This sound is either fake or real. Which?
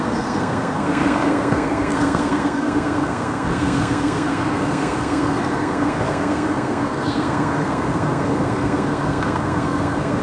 fake